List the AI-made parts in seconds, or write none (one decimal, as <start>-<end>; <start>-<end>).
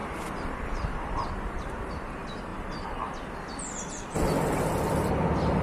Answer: 0.0-1.9